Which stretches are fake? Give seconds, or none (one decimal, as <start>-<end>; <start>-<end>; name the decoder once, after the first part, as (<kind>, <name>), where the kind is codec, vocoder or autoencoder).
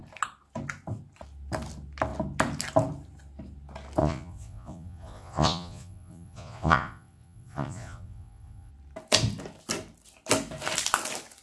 4.0-8.7 (vocoder, Vocos)